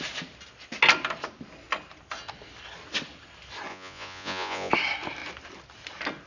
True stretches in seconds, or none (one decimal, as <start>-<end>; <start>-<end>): 0.0-3.7; 4.7-6.3